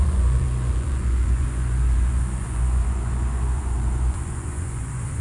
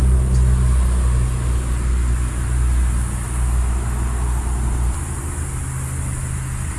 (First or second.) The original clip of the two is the second